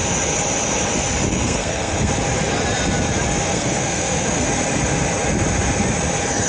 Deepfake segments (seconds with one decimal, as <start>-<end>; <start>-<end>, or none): 1.3-2.1; 3.5-4.5